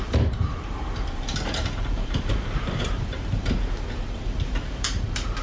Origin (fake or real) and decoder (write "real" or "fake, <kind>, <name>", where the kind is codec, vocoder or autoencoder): fake, vocoder, BigVGAN v2